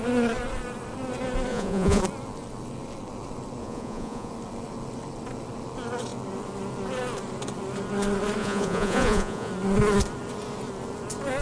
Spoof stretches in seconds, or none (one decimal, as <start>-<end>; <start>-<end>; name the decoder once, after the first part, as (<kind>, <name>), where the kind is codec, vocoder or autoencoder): 1.5-2.0 (vocoder, Vocos); 3.6-4.3; 8.4-9.5